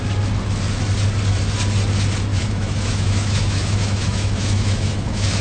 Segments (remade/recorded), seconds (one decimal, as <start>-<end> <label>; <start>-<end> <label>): 0.0-2.3 recorded; 2.3-5.4 remade